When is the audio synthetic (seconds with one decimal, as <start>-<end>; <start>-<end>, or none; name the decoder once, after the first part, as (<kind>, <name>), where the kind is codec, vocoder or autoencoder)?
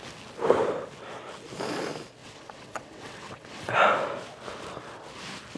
2.2-3.7 (vocoder, WaveNeXt)